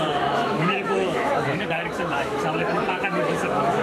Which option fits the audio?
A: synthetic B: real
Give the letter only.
A